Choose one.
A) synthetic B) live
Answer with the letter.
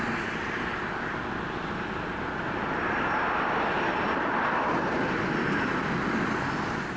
B